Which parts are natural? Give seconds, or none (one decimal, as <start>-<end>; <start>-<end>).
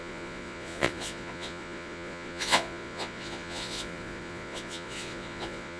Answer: none